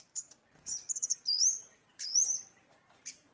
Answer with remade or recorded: remade